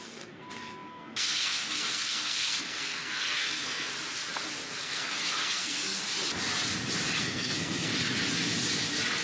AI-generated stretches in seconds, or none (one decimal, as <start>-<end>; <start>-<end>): 0.0-3.9; 4.8-6.0; 7.2-7.9